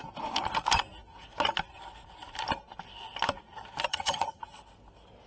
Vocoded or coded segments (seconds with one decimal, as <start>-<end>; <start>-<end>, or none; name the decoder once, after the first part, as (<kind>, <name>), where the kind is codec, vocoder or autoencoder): 3.9-4.4 (vocoder, HiFi-GAN)